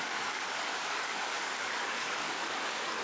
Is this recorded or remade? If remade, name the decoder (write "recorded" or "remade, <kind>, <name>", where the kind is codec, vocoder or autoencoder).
remade, codec, DAC